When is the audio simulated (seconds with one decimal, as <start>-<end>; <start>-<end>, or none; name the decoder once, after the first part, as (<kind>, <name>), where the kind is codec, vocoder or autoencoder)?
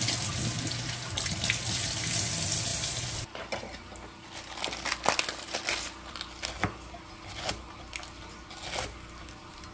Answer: none